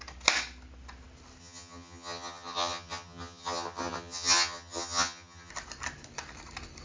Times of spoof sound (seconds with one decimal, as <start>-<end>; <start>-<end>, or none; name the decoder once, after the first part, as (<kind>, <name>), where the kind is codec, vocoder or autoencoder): 1.4-5.5 (vocoder, HiFi-GAN)